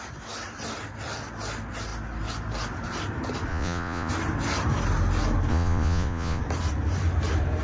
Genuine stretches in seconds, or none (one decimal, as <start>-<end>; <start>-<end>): 0.0-3.5; 4.1-5.5; 6.4-7.6